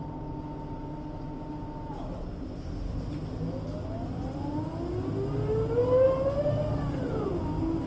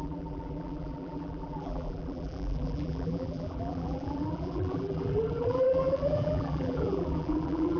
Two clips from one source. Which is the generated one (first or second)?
second